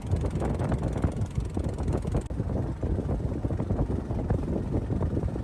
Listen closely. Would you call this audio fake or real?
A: real